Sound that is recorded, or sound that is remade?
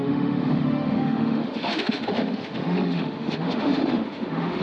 remade